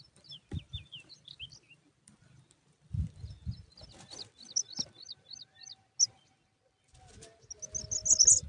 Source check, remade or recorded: recorded